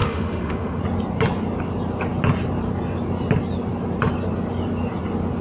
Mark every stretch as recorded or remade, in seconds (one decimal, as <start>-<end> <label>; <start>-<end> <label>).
0.0-0.8 remade; 0.8-5.4 recorded